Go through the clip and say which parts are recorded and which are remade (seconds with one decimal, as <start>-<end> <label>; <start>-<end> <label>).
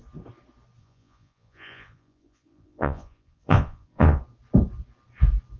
0.0-0.8 recorded; 0.8-4.2 remade; 4.2-5.6 recorded